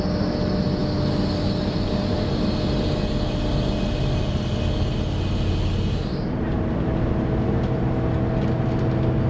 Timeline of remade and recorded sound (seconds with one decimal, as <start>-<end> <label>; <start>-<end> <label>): 0.0-9.3 recorded